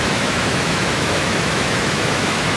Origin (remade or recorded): remade